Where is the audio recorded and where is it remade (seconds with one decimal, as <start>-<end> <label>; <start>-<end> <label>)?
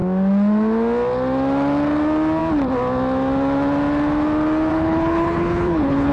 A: 0.0-4.7 recorded; 4.7-6.1 remade